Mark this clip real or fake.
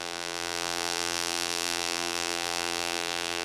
fake